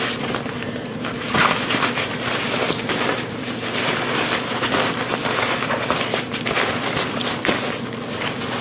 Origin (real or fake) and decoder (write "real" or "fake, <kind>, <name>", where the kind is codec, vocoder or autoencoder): real